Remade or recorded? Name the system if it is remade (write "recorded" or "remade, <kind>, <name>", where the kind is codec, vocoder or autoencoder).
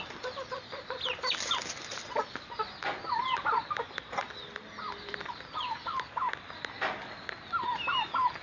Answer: recorded